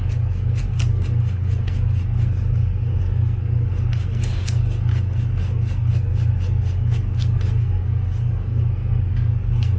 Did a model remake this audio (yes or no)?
yes